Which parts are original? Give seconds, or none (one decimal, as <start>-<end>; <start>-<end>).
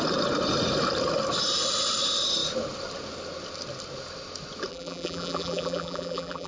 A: 0.0-4.7